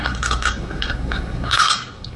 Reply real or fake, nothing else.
fake